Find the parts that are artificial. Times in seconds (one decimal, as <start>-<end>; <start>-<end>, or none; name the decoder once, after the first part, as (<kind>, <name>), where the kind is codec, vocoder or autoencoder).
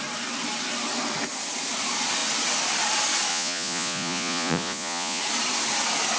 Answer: 3.3-5.2 (vocoder, Vocos)